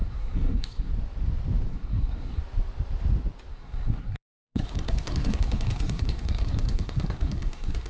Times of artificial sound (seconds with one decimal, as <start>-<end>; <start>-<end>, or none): 0.0-0.9; 1.7-2.4; 3.5-7.9